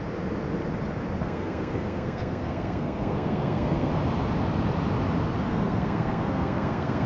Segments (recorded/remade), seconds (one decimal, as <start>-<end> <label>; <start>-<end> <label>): 0.0-1.2 recorded; 1.2-3.9 remade; 3.9-5.5 recorded; 5.5-7.1 remade